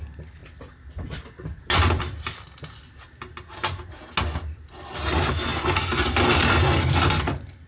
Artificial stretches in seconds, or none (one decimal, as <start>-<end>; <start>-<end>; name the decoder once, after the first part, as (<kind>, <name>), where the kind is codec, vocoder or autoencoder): none